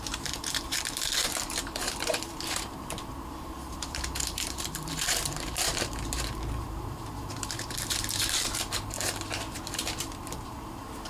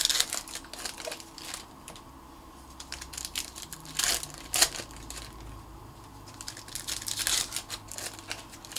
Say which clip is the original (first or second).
second